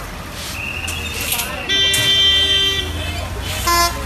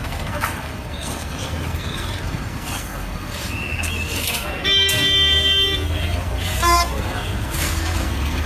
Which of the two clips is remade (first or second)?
second